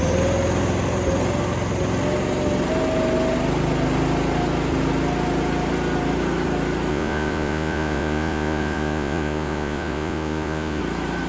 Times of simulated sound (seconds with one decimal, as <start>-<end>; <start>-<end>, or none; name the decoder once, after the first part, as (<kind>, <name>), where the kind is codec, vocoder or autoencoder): 6.9-10.8 (vocoder, Vocos)

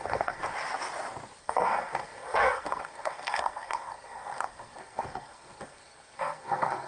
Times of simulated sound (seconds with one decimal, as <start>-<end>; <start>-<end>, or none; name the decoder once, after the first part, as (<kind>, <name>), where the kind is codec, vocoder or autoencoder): 0.0-0.4 (codec, SNAC); 1.4-6.9